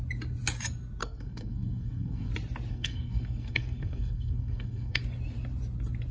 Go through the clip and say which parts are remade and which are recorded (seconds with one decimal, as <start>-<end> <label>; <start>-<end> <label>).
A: 0.0-1.0 recorded; 1.0-2.3 remade; 2.3-2.7 recorded; 2.7-5.0 remade; 5.0-6.1 recorded